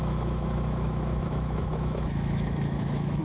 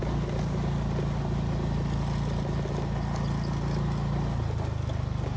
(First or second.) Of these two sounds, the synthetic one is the first